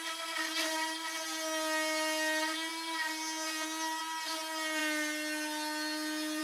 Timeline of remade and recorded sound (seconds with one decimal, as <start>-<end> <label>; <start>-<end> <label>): 0.0-6.4 recorded